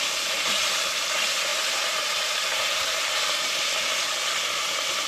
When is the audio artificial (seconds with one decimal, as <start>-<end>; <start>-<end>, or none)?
1.5-3.8